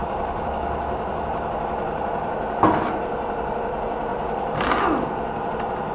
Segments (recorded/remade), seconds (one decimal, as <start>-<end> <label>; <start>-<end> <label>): 0.0-3.5 remade; 3.5-5.9 recorded